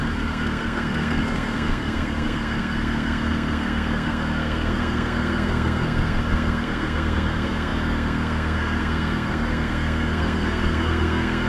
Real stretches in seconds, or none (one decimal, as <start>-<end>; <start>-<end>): none